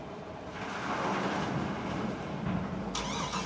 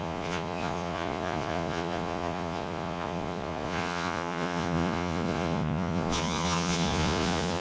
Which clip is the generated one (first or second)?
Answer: second